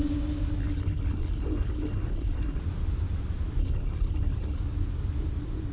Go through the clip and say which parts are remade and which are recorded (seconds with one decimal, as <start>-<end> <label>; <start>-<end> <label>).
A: 0.0-0.6 recorded; 0.6-2.6 remade; 2.6-3.6 recorded; 3.6-4.6 remade; 4.6-5.7 recorded